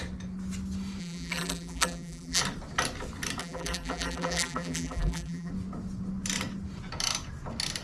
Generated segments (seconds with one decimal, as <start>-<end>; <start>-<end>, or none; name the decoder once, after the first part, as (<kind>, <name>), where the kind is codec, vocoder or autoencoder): 1.0-2.4 (vocoder, BigVGAN v2); 3.4-5.5